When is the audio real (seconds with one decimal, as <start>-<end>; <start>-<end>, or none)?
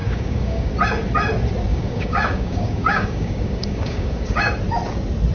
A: 0.7-1.7; 4.5-5.3